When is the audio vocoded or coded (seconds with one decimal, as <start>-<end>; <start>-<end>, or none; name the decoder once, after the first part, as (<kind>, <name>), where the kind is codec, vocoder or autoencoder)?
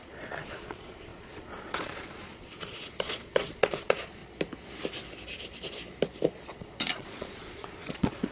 0.0-4.2 (vocoder, Vocos); 6.3-8.3